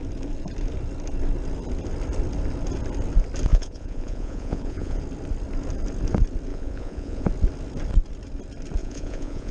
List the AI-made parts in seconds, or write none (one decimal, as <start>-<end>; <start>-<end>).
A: 3.5-5.0; 6.5-7.3; 8.8-9.5